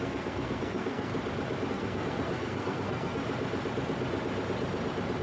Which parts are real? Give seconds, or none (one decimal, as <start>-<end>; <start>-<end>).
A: 1.1-1.7; 3.2-5.2